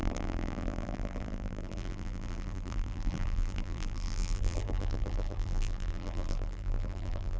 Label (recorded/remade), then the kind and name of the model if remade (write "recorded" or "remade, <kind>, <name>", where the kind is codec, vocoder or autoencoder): remade, vocoder, BigVGAN v2